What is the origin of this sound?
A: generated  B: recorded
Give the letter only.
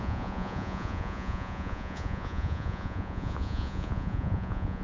A